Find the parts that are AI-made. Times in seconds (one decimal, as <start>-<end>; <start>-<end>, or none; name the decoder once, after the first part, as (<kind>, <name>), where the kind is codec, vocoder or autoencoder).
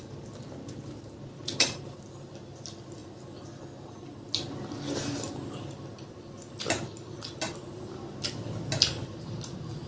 none